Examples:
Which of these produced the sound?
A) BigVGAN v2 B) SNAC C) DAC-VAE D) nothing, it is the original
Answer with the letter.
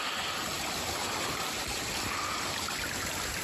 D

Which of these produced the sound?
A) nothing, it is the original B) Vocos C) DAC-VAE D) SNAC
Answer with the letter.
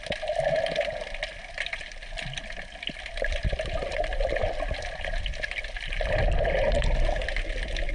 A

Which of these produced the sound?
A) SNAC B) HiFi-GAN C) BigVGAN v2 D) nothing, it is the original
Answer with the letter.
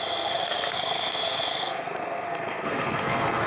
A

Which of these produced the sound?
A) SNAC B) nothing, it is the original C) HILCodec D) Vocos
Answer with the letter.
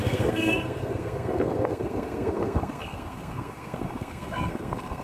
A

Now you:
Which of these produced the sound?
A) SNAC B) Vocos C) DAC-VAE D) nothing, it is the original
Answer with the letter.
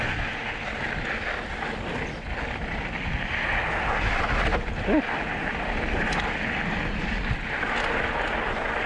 D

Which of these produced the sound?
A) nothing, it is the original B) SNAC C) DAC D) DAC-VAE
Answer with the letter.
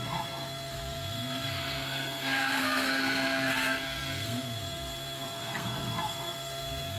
B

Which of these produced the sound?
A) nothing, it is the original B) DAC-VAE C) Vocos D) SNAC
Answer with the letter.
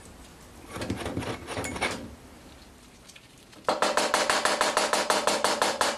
A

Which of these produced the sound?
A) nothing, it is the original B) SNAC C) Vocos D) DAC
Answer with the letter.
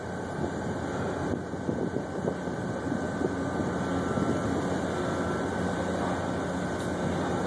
A